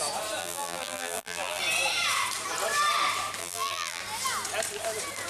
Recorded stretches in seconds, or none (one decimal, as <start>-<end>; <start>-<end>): 0.0-0.4; 1.6-3.4; 4.0-5.3